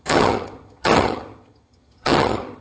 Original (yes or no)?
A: no